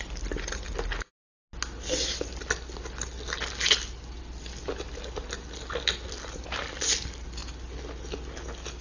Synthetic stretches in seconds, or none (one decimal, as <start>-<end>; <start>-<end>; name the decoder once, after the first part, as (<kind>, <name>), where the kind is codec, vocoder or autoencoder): none